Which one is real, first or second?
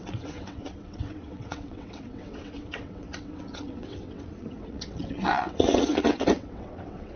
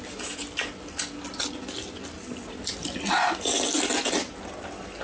second